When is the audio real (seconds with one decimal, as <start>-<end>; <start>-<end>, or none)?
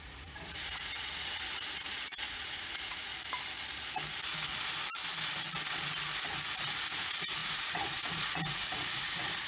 3.1-6.6